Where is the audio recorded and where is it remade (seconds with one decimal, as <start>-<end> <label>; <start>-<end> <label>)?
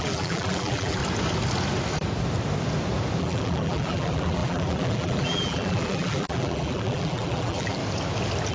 0.0-1.0 remade; 1.0-3.2 recorded; 3.2-7.8 remade; 7.8-8.5 recorded